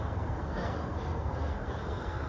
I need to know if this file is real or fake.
fake